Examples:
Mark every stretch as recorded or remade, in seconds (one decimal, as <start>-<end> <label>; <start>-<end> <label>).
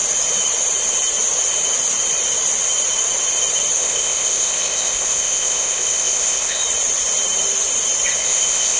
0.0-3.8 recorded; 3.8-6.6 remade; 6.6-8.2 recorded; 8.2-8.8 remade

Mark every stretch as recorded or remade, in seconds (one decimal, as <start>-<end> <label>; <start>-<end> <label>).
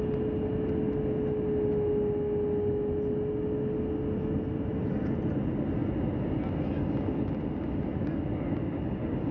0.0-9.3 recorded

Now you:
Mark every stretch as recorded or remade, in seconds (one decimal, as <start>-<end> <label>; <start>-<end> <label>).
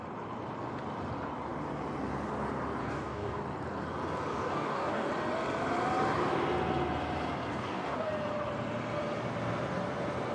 0.0-2.8 recorded; 2.8-3.4 remade; 3.4-4.3 recorded; 4.3-5.1 remade; 5.1-7.5 recorded; 7.5-8.1 remade; 8.1-10.3 recorded